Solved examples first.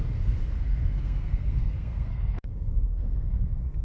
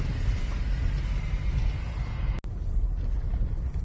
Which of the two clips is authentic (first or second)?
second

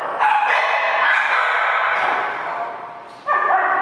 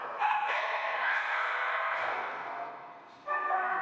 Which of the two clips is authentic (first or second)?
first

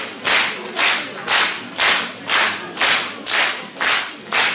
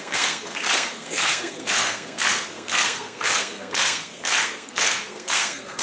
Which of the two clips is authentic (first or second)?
first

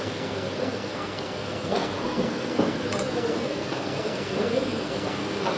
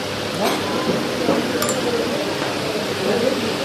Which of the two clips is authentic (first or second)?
second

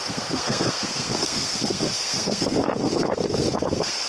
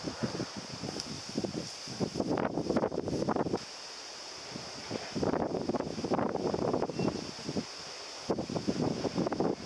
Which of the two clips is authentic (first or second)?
second